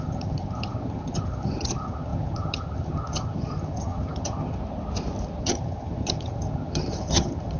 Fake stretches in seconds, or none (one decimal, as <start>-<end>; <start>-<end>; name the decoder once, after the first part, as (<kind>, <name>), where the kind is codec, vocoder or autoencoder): 0.0-4.6 (vocoder, HiFi-GAN); 5.4-7.6